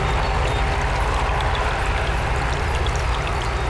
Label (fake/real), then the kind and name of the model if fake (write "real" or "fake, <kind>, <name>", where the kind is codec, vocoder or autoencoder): real